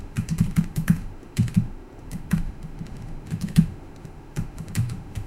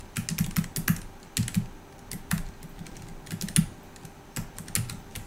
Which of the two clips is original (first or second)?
second